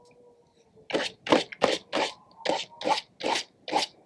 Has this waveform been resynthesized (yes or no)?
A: no